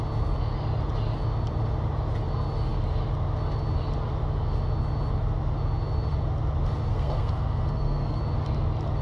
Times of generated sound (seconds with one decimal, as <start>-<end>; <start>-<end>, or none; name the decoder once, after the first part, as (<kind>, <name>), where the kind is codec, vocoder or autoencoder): 6.9-8.2 (codec, SNAC)